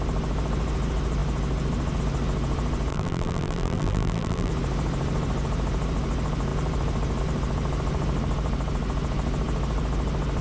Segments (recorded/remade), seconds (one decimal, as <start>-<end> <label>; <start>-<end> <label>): 0.0-2.9 recorded; 2.9-4.5 remade; 4.5-10.4 recorded